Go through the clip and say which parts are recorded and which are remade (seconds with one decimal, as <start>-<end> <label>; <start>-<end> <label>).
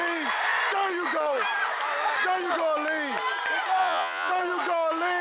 0.0-3.8 recorded; 3.8-4.3 remade; 4.3-5.2 recorded